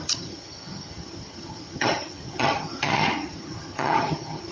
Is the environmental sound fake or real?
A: fake